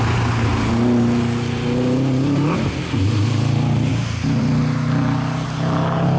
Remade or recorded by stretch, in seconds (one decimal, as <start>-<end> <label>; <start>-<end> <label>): 0.0-6.2 recorded